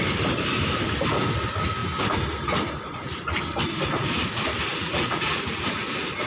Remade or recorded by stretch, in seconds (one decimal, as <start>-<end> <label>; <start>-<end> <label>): 0.0-4.7 recorded; 4.7-5.6 remade; 5.6-6.3 recorded